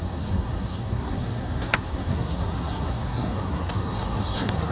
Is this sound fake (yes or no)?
yes